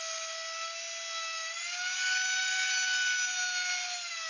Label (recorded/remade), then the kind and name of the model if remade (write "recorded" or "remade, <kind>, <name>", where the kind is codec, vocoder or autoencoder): recorded